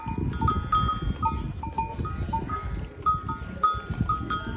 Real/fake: real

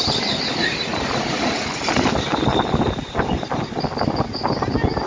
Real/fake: real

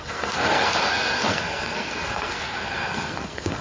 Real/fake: fake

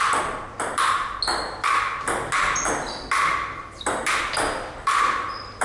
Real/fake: real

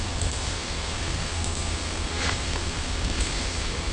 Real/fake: fake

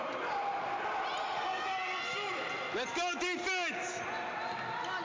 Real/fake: real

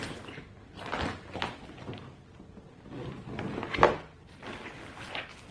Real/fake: real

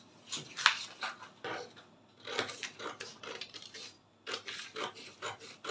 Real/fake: fake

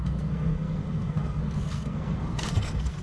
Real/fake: fake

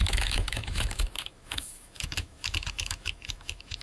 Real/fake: fake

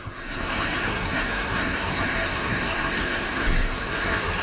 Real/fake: fake